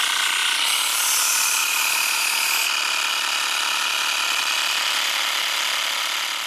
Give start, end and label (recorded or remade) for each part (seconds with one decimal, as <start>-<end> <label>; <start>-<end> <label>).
0.0-1.6 recorded; 1.6-2.7 remade; 2.7-6.5 recorded